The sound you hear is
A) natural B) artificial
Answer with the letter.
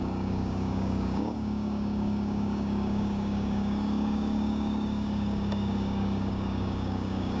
B